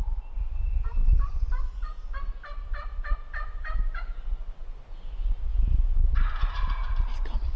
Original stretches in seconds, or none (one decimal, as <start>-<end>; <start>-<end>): 1.0-5.5